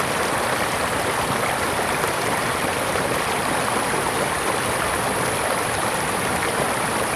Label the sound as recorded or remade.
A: remade